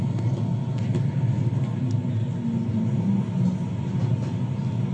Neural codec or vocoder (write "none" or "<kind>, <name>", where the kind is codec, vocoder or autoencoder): none